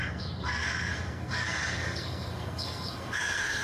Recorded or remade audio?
remade